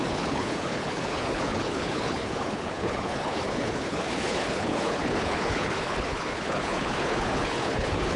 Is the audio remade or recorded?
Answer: remade